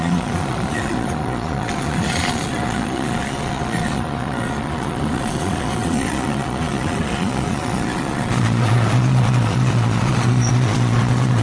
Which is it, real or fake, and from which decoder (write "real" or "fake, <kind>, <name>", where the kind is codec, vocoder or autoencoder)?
fake, vocoder, Vocos